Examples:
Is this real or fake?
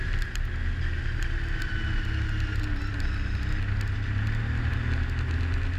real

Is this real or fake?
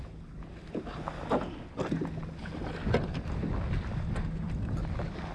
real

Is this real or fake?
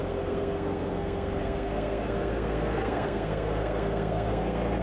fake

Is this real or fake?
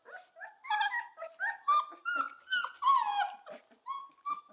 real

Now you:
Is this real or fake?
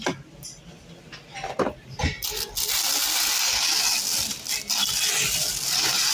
real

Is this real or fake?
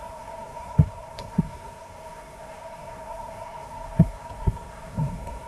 fake